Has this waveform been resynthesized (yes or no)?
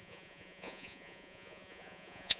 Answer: yes